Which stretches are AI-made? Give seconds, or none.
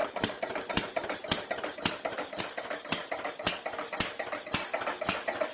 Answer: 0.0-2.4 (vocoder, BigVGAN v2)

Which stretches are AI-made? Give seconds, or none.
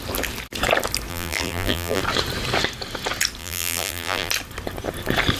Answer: 1.1-2.0 (vocoder, BigVGAN v2); 3.4-4.3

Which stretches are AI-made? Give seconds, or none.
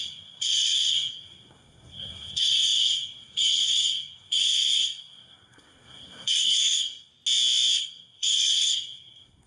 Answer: 0.0-7.1 (codec, SNAC); 7.8-9.5